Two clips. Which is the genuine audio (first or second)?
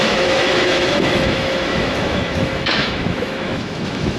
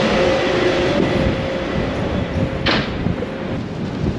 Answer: second